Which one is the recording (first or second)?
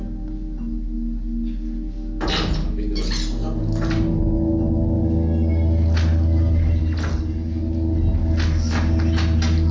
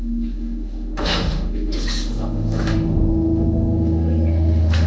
first